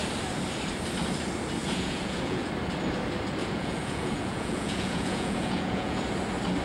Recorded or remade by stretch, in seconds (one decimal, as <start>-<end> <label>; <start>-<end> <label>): 0.0-1.6 recorded; 1.6-2.5 remade; 2.5-3.4 recorded; 3.4-6.0 remade; 6.0-6.6 recorded